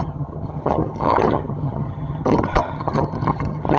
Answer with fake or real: fake